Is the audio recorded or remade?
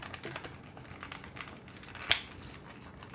recorded